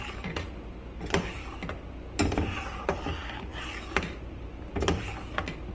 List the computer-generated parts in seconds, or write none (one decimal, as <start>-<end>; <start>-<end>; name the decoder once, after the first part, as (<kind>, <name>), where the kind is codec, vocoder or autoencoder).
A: none